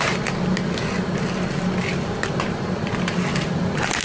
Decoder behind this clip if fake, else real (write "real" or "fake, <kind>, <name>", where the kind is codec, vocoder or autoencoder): real